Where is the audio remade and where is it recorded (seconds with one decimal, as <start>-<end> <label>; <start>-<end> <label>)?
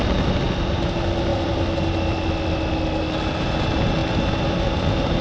0.0-5.2 recorded